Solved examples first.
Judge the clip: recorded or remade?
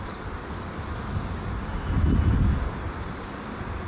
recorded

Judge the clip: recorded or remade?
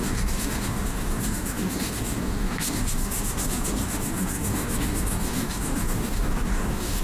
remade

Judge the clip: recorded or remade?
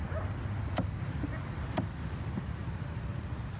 recorded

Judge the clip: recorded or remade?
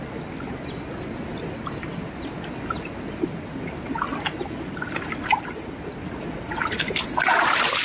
recorded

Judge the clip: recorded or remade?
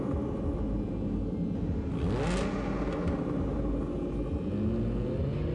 recorded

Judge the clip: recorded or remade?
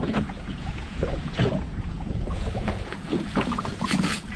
remade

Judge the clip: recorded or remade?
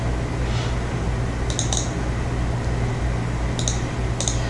recorded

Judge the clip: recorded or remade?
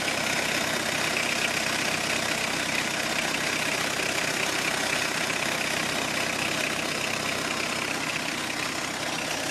remade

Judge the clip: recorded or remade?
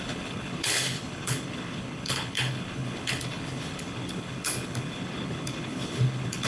remade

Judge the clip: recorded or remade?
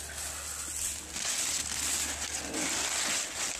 recorded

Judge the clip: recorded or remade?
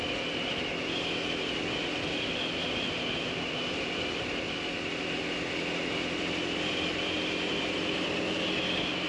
recorded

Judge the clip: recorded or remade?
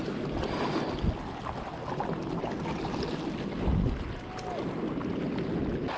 recorded